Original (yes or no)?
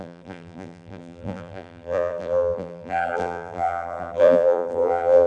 no